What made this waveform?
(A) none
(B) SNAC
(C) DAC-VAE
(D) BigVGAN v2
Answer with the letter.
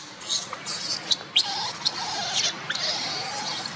A